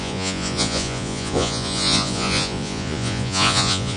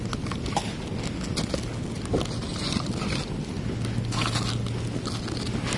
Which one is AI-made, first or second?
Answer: first